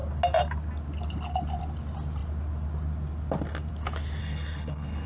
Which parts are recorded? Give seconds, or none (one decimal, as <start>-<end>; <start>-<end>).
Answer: 0.0-4.2

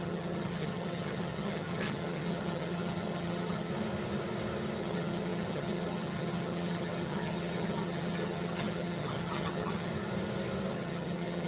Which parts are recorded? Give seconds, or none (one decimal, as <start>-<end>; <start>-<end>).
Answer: 3.7-4.8; 9.9-10.7